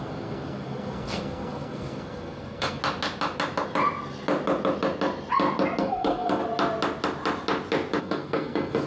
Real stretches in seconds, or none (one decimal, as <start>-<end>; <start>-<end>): 2.8-5.8; 6.4-8.0